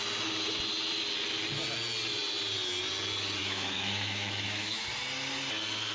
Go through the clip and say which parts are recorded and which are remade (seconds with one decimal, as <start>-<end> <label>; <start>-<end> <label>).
0.0-3.4 recorded; 3.4-4.9 remade; 4.9-5.9 recorded